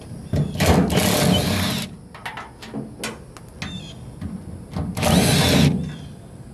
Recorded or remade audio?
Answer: recorded